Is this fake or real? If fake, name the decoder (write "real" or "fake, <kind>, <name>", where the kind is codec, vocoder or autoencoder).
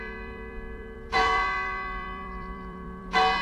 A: fake, vocoder, BigVGAN v2